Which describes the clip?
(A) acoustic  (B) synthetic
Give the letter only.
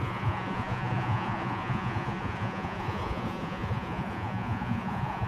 B